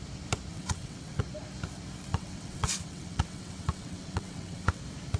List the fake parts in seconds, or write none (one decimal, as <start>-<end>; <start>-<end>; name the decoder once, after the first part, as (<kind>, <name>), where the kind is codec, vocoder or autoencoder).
0.5-1.2 (vocoder, WaveNeXt); 2.1-4.8